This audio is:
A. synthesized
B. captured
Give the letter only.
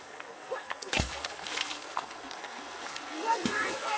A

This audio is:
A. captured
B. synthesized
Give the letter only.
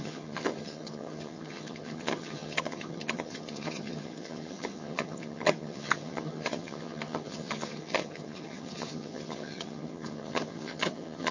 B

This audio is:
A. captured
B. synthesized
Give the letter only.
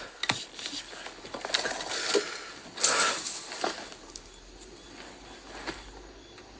A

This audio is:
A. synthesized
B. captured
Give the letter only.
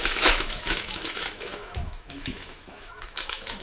A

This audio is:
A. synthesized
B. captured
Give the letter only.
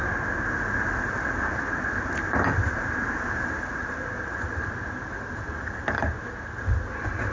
B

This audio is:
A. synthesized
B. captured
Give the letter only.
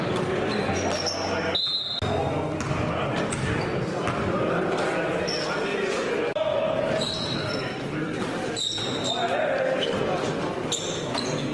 B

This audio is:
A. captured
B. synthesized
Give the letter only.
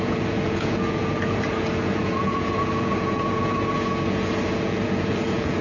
B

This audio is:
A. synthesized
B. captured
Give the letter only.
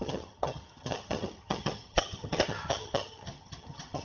A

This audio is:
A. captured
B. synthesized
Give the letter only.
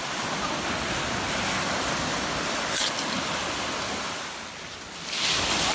A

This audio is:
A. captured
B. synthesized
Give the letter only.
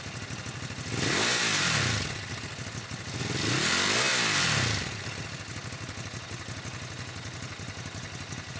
A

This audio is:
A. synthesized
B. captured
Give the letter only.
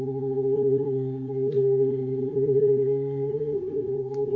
A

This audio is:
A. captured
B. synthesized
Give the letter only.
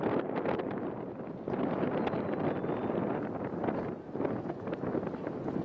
A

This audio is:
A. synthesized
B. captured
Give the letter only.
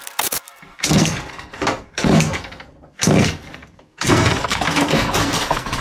A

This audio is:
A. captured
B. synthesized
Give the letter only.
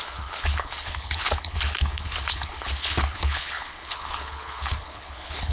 B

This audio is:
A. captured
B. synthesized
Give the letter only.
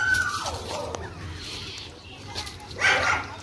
A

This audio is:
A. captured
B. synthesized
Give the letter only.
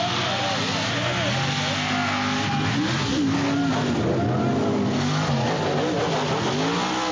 A